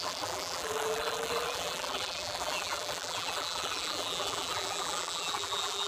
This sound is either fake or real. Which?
fake